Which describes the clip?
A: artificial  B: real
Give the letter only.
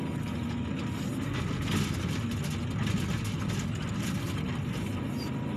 B